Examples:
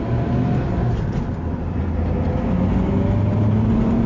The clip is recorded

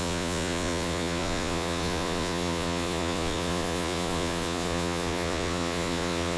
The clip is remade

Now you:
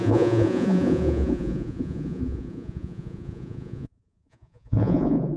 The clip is remade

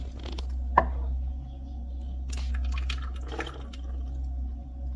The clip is recorded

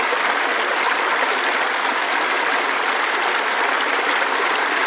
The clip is recorded